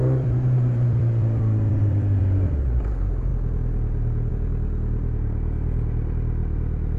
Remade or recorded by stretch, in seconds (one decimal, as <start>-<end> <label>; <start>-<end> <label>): 0.0-2.2 remade; 2.2-7.0 recorded